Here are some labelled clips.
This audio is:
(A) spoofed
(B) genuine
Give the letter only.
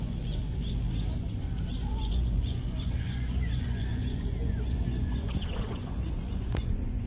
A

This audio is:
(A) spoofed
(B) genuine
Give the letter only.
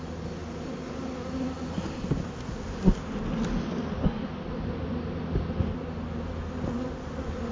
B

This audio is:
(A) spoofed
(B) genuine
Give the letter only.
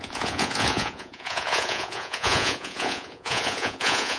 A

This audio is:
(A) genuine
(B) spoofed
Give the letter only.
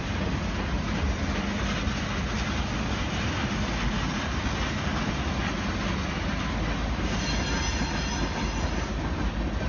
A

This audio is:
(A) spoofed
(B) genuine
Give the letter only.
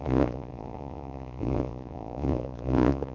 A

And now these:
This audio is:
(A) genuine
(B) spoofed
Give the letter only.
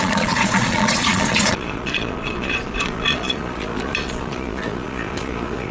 B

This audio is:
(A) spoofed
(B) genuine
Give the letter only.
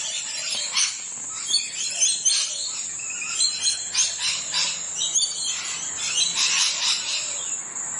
B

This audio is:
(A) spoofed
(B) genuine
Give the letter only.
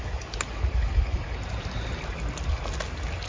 B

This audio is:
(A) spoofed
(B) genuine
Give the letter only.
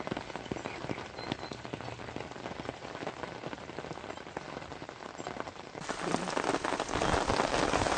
B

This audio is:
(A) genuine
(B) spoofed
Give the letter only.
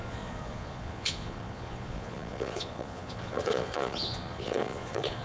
B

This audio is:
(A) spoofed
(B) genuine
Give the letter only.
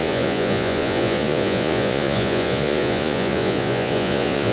A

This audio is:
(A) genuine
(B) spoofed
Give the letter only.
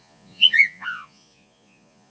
B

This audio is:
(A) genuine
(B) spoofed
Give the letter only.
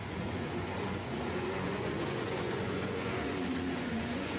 B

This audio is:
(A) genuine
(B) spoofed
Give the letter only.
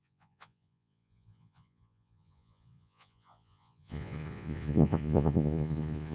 B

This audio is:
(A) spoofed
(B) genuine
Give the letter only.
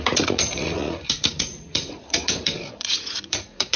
A